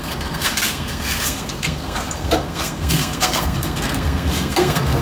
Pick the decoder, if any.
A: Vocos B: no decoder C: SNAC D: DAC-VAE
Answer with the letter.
C